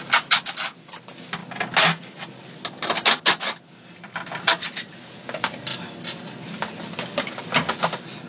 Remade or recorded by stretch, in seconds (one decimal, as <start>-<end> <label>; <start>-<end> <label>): 0.0-8.3 recorded